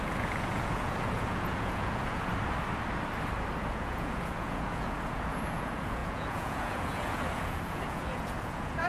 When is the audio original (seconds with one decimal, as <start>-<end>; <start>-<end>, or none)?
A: 2.3-3.7